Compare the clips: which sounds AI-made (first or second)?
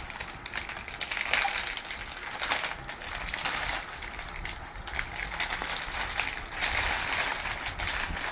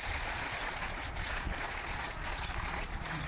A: second